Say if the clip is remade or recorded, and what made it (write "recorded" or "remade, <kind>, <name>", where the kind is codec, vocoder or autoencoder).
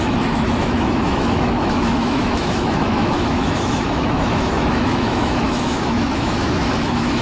remade, autoencoder, DAC-VAE